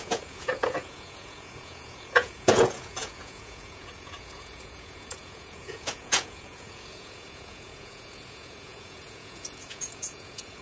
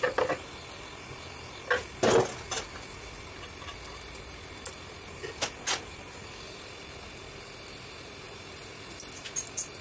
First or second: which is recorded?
second